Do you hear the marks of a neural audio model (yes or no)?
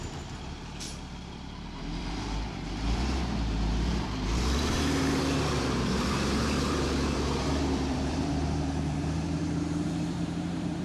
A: yes